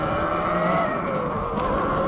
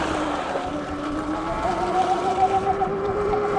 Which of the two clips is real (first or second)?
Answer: first